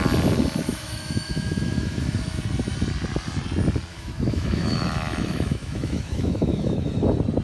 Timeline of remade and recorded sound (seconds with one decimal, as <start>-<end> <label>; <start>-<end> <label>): 0.0-0.7 recorded; 0.7-2.2 remade; 2.2-3.9 recorded; 3.9-6.9 remade; 6.9-7.4 recorded